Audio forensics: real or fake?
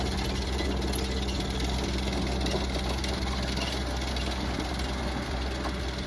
real